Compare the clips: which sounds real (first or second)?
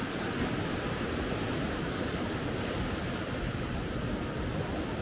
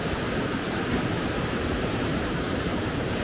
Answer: first